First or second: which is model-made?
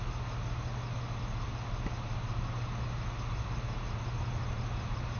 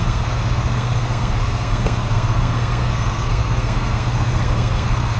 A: second